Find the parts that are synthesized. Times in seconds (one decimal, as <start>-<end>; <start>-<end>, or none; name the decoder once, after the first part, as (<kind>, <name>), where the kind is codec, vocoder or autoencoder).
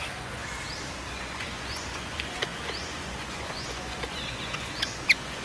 0.0-0.4 (vocoder, Vocos); 1.1-5.4